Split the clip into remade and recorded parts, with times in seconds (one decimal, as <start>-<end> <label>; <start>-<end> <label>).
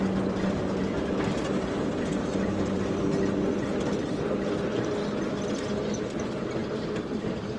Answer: 0.0-7.6 recorded